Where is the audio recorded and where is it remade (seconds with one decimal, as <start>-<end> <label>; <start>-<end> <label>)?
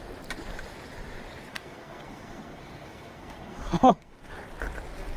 0.0-1.5 recorded; 1.5-4.3 remade; 4.3-5.2 recorded